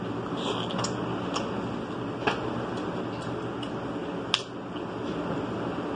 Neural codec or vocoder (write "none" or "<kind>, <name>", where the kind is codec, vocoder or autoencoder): none